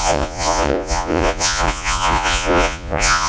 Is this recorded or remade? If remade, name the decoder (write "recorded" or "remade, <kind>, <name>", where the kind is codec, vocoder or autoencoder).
remade, vocoder, Vocos